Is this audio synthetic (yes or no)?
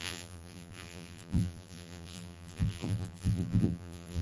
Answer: yes